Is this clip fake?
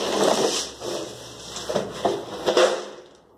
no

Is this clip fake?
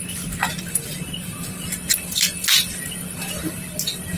no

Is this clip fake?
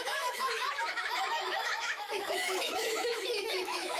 yes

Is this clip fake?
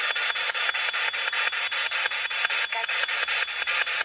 no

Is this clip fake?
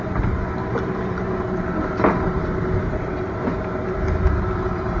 no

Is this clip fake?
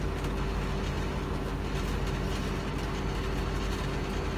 no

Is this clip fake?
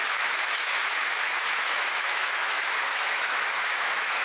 yes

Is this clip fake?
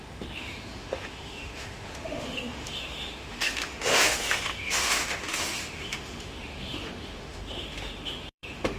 yes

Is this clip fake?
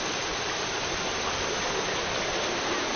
no